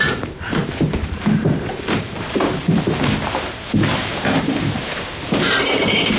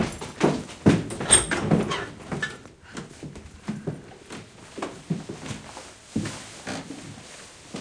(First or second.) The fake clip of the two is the first